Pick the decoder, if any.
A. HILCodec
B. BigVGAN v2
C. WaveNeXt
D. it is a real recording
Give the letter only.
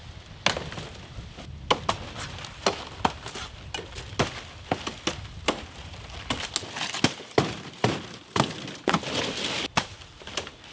D